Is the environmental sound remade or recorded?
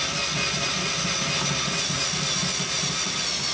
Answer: recorded